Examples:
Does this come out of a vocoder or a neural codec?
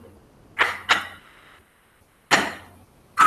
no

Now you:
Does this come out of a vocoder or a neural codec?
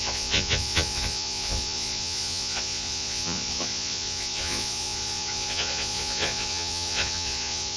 yes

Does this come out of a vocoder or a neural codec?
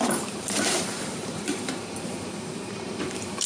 yes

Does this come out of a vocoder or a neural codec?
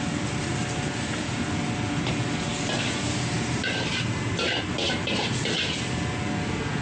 no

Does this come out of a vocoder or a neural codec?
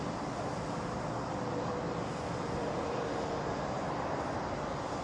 no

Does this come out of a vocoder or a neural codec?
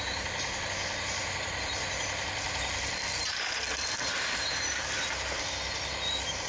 no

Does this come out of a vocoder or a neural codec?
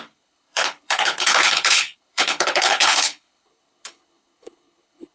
yes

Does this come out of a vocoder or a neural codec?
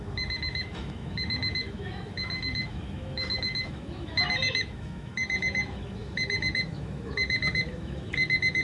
yes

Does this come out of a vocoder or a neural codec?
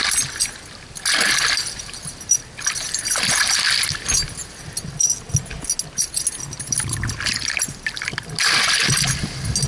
no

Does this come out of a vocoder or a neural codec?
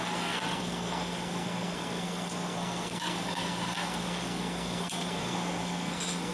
yes